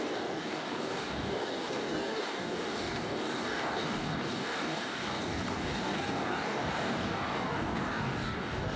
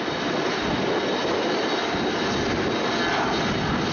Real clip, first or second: second